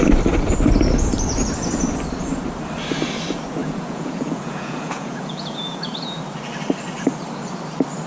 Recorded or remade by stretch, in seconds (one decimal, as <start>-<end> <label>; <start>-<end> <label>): 0.0-3.6 recorded; 3.6-6.2 remade; 6.2-8.1 recorded